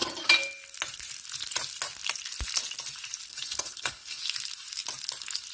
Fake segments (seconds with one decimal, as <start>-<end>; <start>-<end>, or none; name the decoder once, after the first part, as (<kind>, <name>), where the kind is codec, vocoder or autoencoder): 3.3-4.2 (codec, HILCodec)